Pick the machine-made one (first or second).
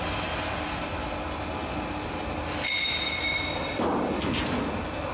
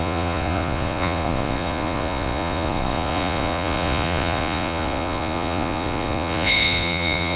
second